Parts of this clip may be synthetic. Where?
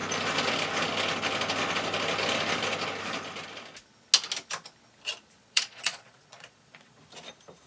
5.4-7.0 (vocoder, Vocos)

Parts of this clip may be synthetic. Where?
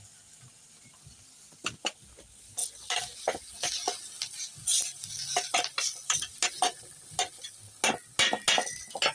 none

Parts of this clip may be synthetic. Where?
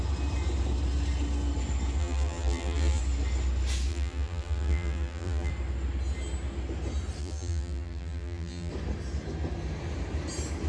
2.0-3.0 (vocoder, BigVGAN v2); 3.9-5.5; 7.2-8.7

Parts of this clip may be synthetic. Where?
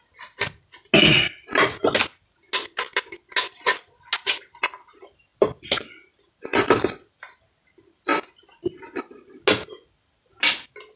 none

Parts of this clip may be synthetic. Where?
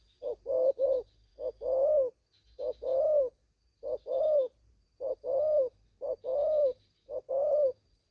0.0-1.3 (vocoder, BigVGAN v2); 4.2-6.3; 7.3-8.1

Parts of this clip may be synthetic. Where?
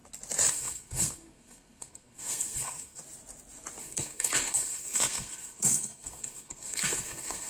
0.5-3.0 (codec, SNAC); 3.8-7.5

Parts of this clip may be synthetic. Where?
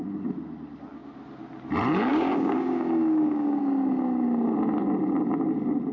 2.1-3.6 (codec, DAC)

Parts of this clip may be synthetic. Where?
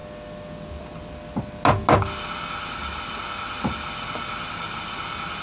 none